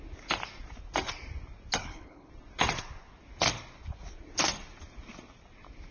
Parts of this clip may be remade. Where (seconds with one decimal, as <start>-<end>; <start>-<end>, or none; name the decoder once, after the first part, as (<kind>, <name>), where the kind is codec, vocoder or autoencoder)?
1.8-2.3 (codec, HILCodec)